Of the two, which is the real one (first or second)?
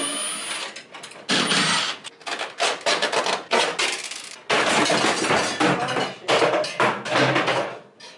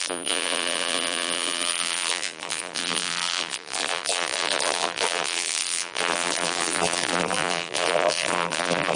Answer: first